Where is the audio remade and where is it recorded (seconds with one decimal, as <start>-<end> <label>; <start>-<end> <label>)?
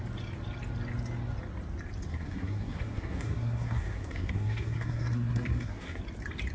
0.0-2.1 recorded; 2.1-6.0 remade; 6.0-6.5 recorded